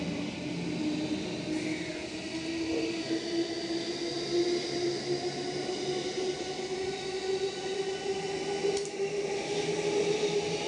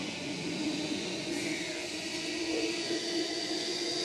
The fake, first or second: second